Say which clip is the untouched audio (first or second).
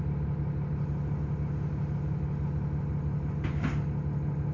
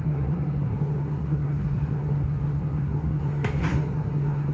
first